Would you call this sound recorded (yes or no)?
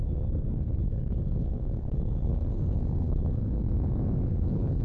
no